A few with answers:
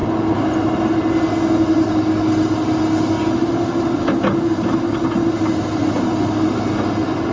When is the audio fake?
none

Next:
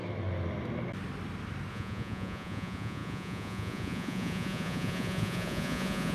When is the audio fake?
1.7-6.1 (vocoder, Vocos)

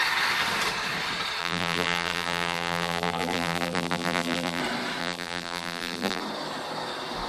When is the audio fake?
1.4-4.6 (vocoder, BigVGAN v2); 5.0-6.2

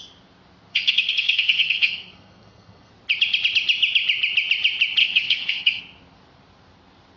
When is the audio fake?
0.7-2.9 (codec, SNAC); 5.0-5.8

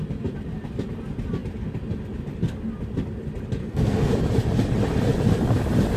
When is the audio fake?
3.6-4.1 (codec, SNAC)

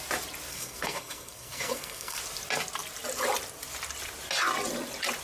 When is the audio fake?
0.5-2.2 (codec, SNAC)

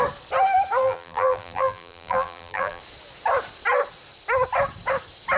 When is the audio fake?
0.8-2.8 (vocoder, BigVGAN v2)

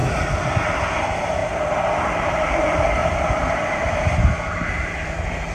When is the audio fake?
0.7-1.4 (vocoder, BigVGAN v2); 2.3-3.0; 4.0-5.5